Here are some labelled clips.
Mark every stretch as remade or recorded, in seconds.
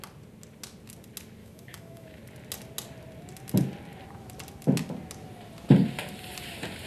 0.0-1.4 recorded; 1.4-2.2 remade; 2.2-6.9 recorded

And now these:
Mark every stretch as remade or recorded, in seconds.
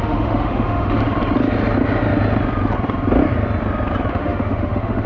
0.0-1.0 remade; 1.0-4.1 recorded; 4.1-5.1 remade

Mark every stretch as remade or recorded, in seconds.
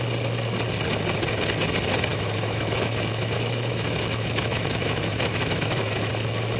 0.0-2.1 recorded; 2.1-6.1 remade; 6.1-6.6 recorded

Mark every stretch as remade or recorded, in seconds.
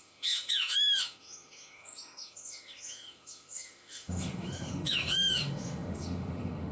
0.0-6.7 remade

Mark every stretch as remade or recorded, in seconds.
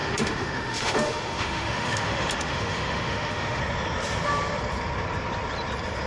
0.0-3.6 remade; 3.6-6.1 recorded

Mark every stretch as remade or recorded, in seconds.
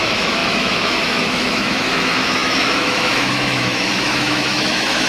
0.0-5.1 remade